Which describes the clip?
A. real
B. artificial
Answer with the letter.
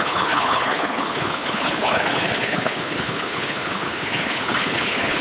B